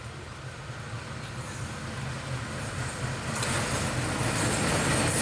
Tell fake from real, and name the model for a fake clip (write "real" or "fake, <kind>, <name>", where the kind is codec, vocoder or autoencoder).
real